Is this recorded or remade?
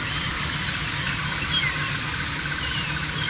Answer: recorded